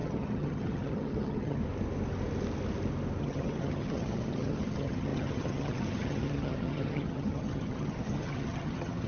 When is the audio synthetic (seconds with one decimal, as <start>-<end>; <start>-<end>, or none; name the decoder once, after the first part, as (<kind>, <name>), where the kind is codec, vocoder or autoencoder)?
0.0-1.6 (vocoder, HiFi-GAN); 3.2-9.1